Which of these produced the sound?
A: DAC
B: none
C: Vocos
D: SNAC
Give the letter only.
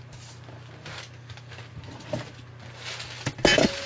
B